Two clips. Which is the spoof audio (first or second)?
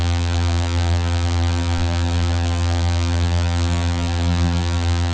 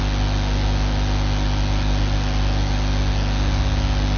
first